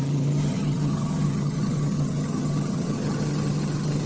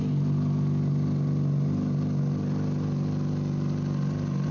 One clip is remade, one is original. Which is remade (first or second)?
first